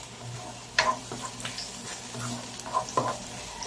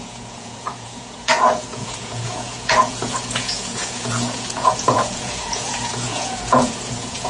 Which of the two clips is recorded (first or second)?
first